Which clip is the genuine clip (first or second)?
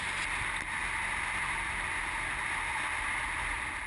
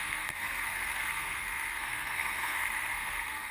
first